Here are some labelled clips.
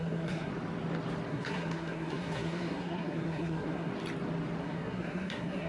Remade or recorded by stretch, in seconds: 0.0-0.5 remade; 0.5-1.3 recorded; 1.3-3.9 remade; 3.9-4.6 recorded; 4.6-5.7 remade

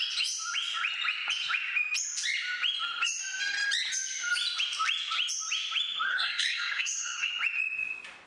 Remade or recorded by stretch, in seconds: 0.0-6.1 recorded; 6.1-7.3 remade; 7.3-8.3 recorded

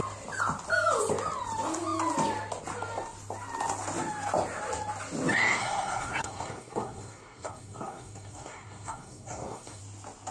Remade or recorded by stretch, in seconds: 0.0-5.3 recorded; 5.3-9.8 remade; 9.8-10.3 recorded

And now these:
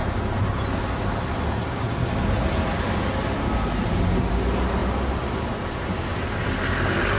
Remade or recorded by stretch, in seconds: 0.0-7.2 recorded

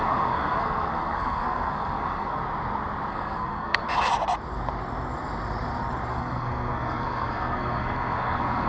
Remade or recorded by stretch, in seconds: 0.0-2.4 remade; 2.4-3.1 recorded; 3.1-3.8 remade; 3.8-6.1 recorded; 6.1-8.7 remade

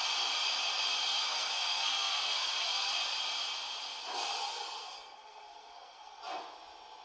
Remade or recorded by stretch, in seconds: 0.0-0.9 recorded; 0.9-2.9 remade; 2.9-4.5 recorded; 4.5-6.2 remade; 6.2-7.0 recorded

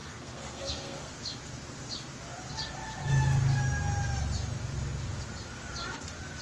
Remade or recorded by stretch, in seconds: 0.0-1.1 remade; 1.1-6.4 recorded